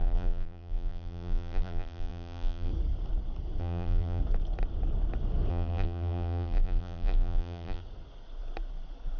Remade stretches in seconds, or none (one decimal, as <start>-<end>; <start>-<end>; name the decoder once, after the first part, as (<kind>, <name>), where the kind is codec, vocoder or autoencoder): 0.0-2.7 (vocoder, BigVGAN v2); 3.6-4.2; 5.5-7.8